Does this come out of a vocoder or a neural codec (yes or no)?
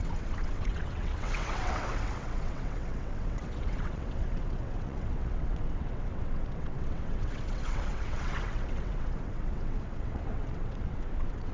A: yes